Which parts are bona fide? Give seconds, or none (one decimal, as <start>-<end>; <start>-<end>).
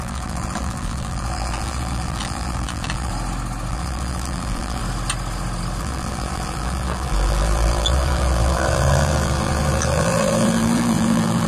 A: 3.1-3.7; 4.8-5.8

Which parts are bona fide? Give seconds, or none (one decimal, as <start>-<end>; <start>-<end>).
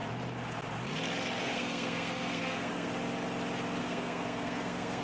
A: 0.0-1.4; 2.9-3.8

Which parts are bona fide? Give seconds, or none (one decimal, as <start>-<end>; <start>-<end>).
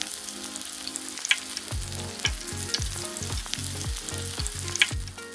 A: 0.0-5.3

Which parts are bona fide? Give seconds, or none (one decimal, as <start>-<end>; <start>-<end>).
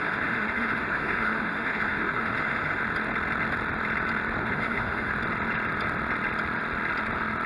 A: 2.8-4.4; 5.1-7.5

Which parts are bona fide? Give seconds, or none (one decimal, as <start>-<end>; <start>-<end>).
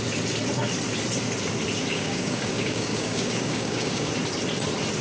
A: 0.0-1.9; 4.1-5.0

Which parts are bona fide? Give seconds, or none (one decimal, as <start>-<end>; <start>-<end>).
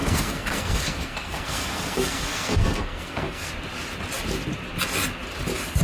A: 3.5-5.8